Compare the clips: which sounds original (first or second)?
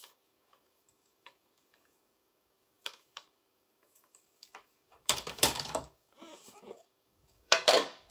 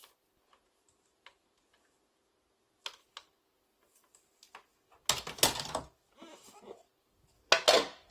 second